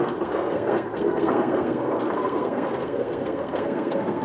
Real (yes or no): no